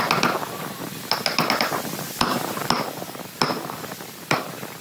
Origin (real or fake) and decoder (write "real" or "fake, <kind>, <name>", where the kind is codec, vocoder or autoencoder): real